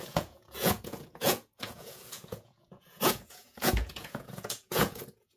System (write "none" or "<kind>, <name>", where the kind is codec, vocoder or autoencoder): vocoder, Vocos